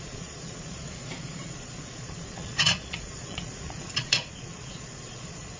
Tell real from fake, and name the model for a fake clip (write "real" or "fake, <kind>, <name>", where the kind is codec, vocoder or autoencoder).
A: fake, vocoder, Vocos